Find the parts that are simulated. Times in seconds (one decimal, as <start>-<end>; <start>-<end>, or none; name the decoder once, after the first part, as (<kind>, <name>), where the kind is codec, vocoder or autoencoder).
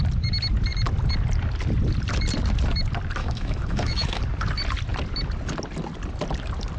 3.2-4.2 (autoencoder, DAC-VAE)